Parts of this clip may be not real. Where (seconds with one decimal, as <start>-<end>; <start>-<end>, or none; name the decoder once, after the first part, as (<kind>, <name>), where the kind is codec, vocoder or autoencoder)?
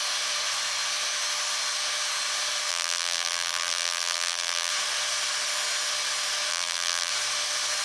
2.7-4.7 (vocoder, BigVGAN v2); 6.5-7.1